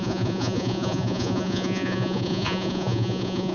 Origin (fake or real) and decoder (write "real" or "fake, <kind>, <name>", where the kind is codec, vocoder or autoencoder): fake, vocoder, Vocos